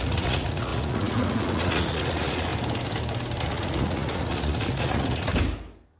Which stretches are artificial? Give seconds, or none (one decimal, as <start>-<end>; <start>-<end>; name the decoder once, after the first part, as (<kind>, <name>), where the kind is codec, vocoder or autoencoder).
0.0-2.5 (vocoder, Vocos); 3.4-5.3